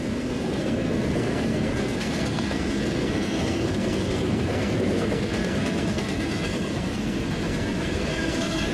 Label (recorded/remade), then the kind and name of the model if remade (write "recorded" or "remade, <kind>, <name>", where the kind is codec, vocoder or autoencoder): remade, codec, SNAC